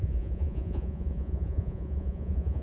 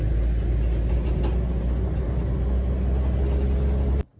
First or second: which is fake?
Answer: first